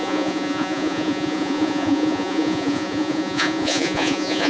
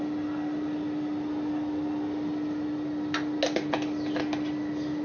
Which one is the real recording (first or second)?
second